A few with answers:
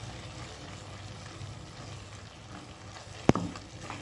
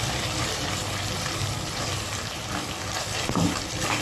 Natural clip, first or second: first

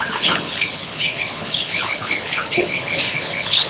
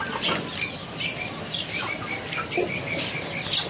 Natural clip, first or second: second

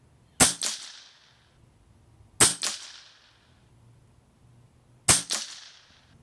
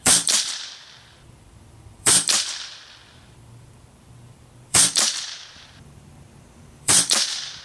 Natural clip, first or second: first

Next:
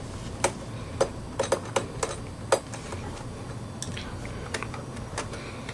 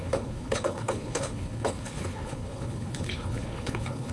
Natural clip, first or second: first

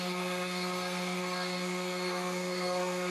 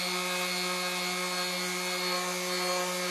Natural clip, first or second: second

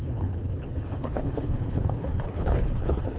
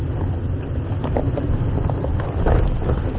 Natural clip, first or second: second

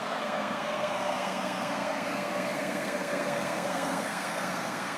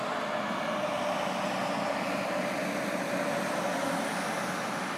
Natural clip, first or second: second